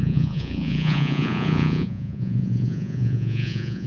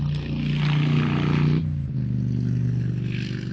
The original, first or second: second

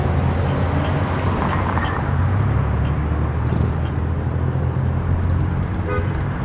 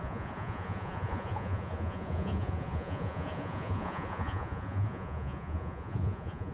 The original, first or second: first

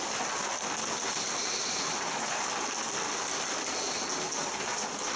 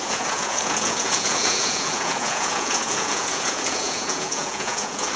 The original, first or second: first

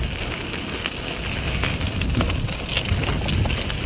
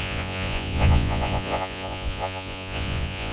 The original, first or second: first